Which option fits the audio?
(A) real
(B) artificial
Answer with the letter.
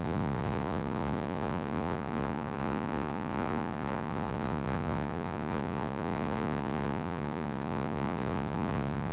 B